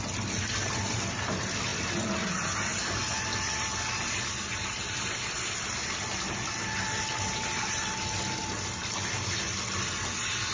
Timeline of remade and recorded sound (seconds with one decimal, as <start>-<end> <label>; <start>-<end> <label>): 0.0-10.5 recorded